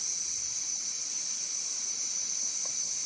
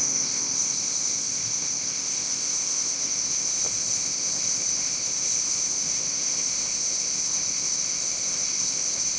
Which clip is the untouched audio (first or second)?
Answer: first